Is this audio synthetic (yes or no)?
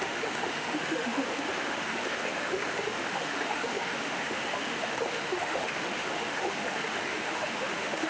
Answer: yes